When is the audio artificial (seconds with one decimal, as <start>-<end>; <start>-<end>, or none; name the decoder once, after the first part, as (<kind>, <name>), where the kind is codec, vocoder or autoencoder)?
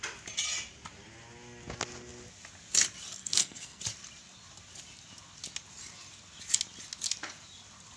3.2-3.8 (codec, SNAC)